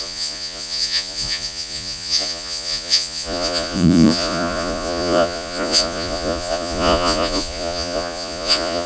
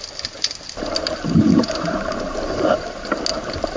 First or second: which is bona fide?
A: second